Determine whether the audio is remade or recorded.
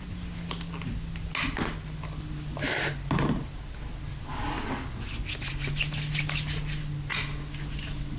recorded